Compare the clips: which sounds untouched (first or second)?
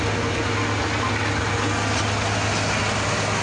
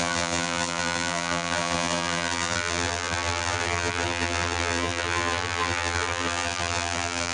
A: first